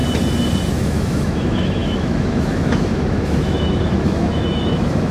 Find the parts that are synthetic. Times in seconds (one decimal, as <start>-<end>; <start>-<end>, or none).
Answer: 0.7-5.1